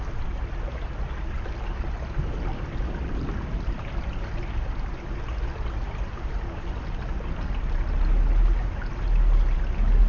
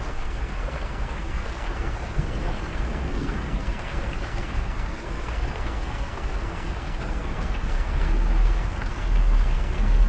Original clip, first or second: first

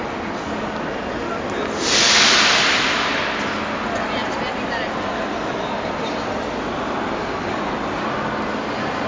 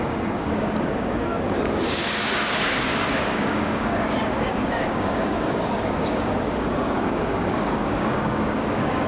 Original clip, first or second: first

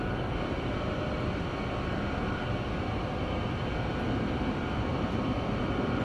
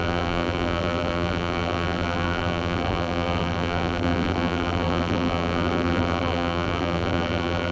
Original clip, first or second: first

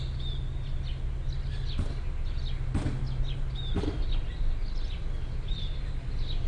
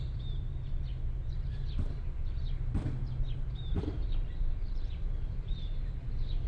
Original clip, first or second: first